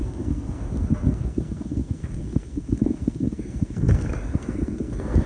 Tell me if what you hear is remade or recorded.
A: remade